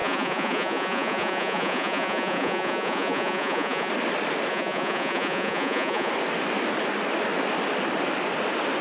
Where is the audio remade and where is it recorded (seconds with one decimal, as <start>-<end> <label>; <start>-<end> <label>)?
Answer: 0.0-3.9 remade; 3.9-4.5 recorded; 4.5-6.1 remade; 6.1-8.8 recorded